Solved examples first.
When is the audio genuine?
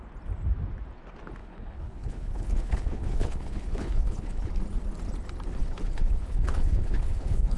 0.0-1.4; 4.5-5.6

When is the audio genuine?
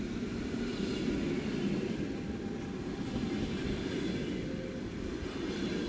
0.0-5.9